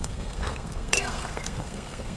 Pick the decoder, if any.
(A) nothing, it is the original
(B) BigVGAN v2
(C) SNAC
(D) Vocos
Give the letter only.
C